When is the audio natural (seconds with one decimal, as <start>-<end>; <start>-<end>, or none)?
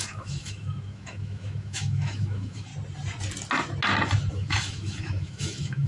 2.7-4.3